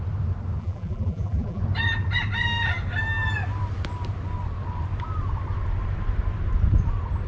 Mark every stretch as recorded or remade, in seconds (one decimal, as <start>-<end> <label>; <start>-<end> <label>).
0.0-0.6 recorded; 0.6-1.6 remade; 1.6-7.3 recorded